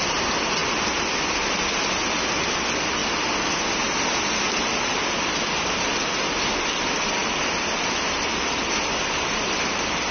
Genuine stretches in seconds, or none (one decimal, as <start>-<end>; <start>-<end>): 0.0-10.1